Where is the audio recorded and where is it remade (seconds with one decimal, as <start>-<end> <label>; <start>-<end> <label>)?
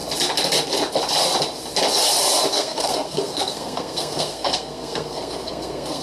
0.0-2.5 recorded; 2.5-6.0 remade